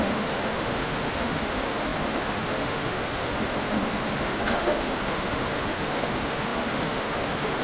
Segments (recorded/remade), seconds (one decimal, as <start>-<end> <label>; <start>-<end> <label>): 0.0-7.6 remade